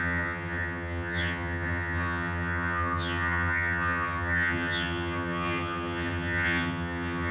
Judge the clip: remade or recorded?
remade